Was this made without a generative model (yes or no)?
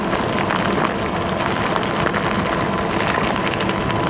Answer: yes